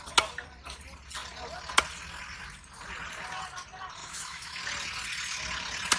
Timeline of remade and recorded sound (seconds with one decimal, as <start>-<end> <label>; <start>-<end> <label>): 0.0-4.0 recorded; 4.0-4.6 remade; 4.6-6.0 recorded